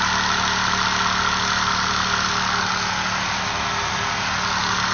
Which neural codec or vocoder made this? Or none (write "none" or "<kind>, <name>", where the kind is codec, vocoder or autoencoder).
none